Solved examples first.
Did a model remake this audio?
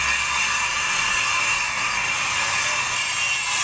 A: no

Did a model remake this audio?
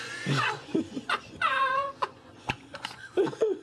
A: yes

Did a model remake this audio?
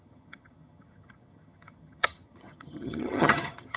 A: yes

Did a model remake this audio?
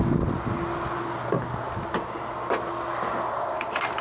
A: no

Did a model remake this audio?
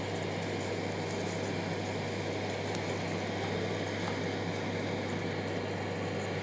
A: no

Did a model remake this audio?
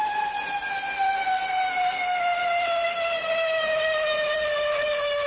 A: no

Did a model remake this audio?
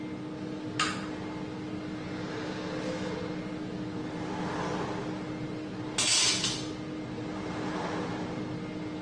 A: no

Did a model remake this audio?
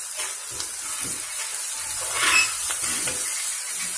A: no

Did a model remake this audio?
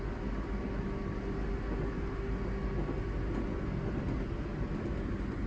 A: no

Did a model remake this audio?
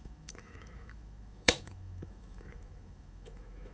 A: yes